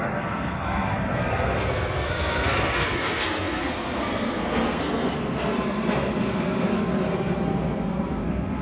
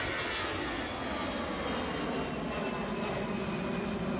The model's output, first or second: first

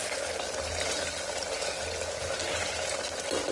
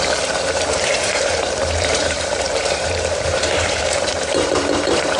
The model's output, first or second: second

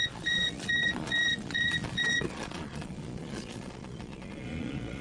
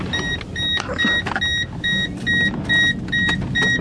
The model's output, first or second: first